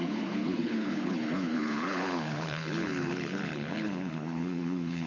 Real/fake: fake